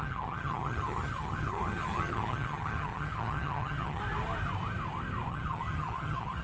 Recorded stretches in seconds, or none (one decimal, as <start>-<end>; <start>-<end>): 4.0-5.3